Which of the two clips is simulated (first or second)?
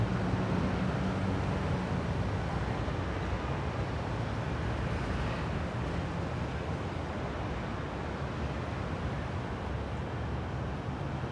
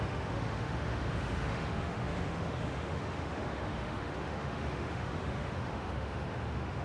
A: second